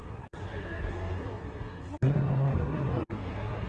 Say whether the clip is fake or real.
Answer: fake